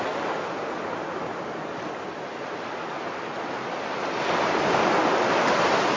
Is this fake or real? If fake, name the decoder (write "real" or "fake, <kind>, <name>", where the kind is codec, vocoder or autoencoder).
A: real